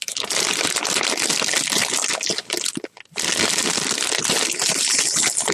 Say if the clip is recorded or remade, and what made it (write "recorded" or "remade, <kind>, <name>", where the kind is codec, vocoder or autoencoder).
recorded